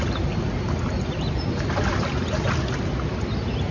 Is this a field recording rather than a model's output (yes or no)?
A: yes